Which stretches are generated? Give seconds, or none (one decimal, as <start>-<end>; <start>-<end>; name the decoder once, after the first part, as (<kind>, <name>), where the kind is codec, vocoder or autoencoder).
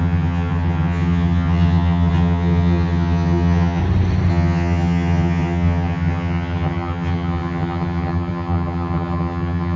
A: 0.0-3.8 (vocoder, HiFi-GAN); 4.3-9.8